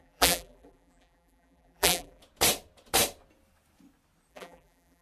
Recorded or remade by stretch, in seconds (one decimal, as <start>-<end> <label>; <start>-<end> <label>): 0.0-2.2 remade; 2.2-4.3 recorded; 4.3-5.0 remade

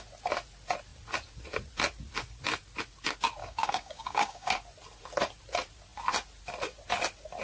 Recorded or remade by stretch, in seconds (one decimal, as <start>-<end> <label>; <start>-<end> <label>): 0.0-3.4 recorded; 3.4-4.5 remade; 4.5-7.4 recorded